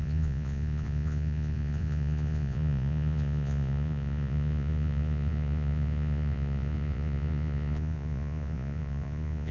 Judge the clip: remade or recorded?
remade